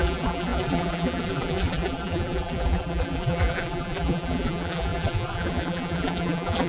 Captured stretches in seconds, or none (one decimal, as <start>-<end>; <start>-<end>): none